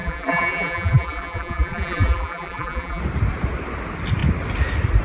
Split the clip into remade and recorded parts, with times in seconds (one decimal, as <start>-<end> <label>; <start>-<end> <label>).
0.0-3.0 remade; 3.0-5.0 recorded